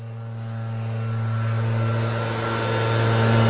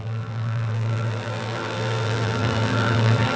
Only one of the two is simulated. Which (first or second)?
second